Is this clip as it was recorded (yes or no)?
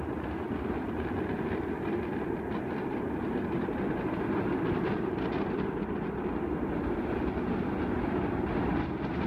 yes